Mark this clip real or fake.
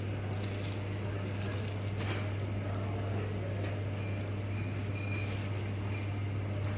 real